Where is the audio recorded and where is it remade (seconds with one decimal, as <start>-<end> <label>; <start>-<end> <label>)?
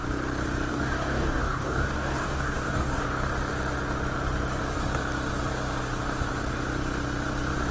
0.0-0.7 recorded; 0.7-3.1 remade; 3.1-7.7 recorded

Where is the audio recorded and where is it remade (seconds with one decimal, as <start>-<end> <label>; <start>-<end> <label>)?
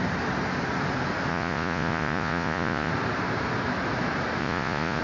0.0-1.3 recorded; 1.3-2.9 remade; 2.9-4.4 recorded; 4.4-5.0 remade